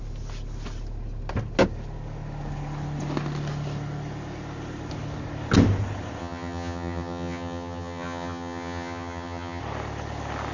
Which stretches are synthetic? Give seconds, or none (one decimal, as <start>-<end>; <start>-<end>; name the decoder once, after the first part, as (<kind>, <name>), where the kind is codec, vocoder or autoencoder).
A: 6.2-9.6 (vocoder, HiFi-GAN)